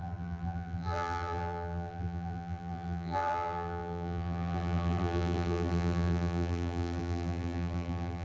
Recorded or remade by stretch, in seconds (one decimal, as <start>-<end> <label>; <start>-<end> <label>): 0.0-8.2 remade